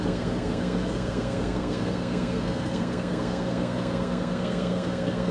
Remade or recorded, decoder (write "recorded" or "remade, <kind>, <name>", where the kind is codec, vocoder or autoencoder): remade, codec, SNAC